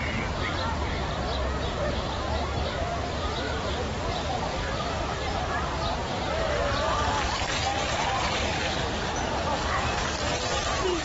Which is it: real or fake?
real